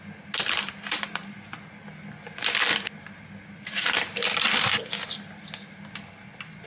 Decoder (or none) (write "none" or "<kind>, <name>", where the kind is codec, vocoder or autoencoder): none